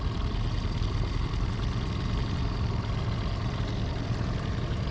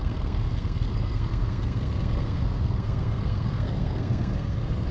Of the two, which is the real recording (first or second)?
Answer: first